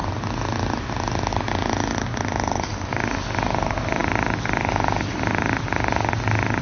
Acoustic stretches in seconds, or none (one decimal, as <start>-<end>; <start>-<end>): 0.0-6.6

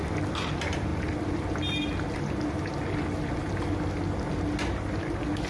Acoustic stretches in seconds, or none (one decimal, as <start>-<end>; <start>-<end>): 0.0-5.5

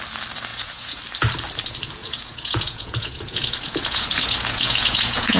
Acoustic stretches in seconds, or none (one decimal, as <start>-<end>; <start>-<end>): 0.0-0.5; 1.0-2.0